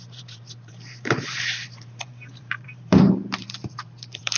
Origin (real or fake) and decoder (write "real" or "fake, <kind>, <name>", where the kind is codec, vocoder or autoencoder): fake, vocoder, BigVGAN v2